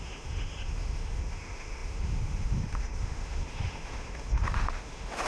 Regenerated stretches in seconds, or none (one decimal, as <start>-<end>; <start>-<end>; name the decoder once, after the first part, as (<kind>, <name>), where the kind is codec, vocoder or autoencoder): 0.0-5.3 (autoencoder, DAC-VAE)